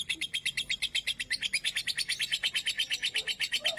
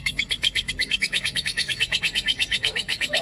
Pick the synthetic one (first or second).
second